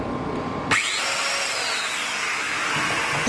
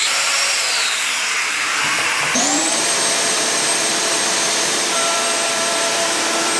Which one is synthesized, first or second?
second